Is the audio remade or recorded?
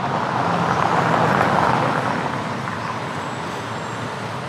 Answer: recorded